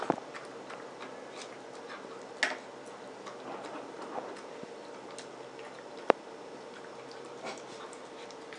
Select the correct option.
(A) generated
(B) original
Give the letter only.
B